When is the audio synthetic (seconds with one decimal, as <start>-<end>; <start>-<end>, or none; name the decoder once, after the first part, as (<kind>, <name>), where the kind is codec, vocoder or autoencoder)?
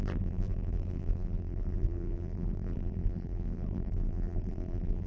0.0-5.1 (vocoder, BigVGAN v2)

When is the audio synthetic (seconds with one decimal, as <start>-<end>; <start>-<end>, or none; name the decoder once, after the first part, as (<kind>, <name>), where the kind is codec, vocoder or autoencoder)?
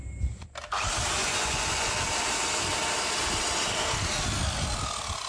1.2-1.9 (vocoder, Vocos)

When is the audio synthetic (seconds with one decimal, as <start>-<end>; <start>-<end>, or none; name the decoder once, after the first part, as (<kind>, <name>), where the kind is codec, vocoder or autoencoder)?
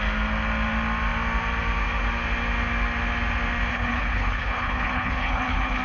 3.7-5.8 (codec, HILCodec)